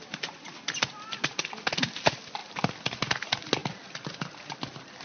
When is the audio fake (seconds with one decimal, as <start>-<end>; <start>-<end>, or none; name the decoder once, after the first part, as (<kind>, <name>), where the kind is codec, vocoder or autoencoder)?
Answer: none